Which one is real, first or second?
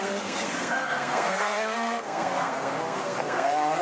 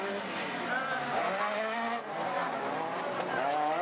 second